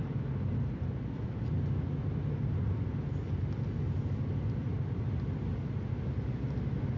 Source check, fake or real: real